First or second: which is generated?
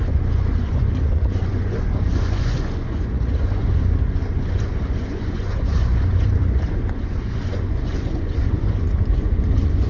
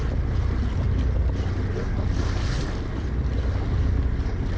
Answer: first